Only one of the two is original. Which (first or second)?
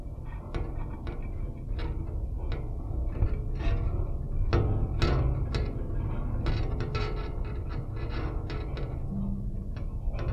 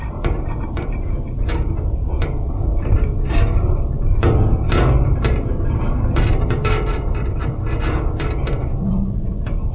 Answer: first